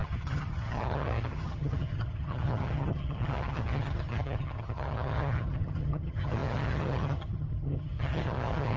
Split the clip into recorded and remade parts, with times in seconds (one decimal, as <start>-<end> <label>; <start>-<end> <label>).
0.0-8.8 remade